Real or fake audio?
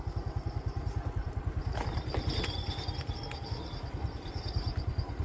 real